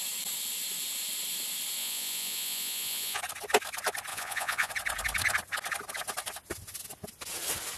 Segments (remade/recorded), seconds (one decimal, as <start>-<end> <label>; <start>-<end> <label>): 0.0-1.8 recorded; 1.8-3.2 remade; 3.2-4.1 recorded; 4.1-4.7 remade; 4.7-7.8 recorded